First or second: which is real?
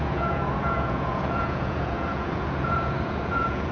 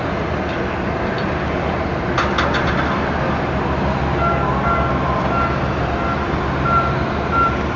second